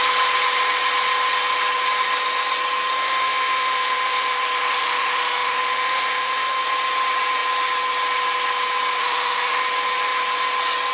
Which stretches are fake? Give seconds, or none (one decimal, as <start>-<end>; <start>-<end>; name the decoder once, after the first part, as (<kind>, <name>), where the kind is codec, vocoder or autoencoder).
2.9-6.6 (autoencoder, DAC-VAE); 9.0-9.6